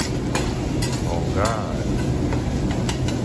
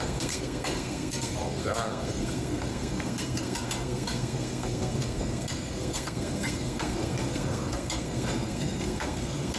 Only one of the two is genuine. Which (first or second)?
first